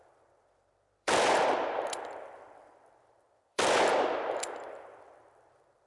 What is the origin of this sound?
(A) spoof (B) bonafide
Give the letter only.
A